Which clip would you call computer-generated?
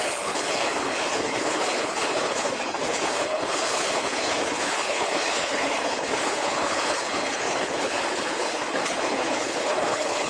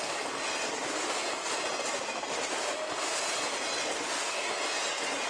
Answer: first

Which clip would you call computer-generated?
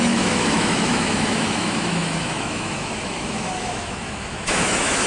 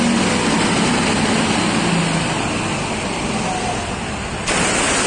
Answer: first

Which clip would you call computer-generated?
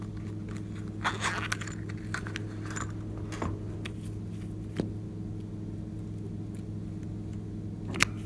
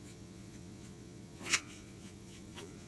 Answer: second